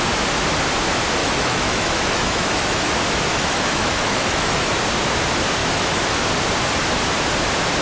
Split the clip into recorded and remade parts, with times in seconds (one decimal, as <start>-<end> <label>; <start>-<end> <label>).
0.0-1.2 recorded; 1.2-2.9 remade; 2.9-3.3 recorded; 3.3-4.7 remade; 4.7-5.6 recorded; 5.6-6.2 remade; 6.2-7.8 recorded